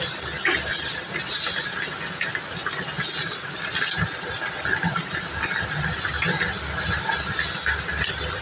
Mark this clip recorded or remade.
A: recorded